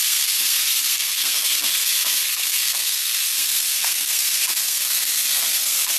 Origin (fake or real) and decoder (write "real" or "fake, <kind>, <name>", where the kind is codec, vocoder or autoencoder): fake, codec, SNAC